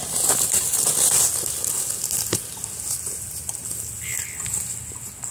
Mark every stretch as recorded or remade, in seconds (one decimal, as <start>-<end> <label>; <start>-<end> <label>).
0.0-5.3 recorded